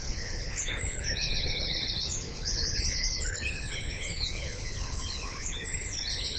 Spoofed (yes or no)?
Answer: yes